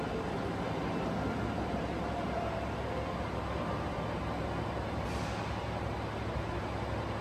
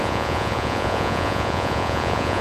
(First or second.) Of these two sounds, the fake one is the second